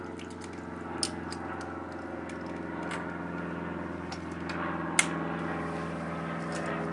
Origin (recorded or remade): recorded